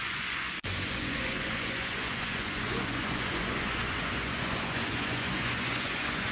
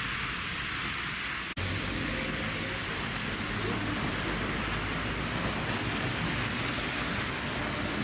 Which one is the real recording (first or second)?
second